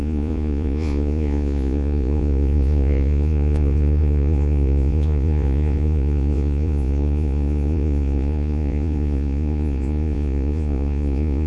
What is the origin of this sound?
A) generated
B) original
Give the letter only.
A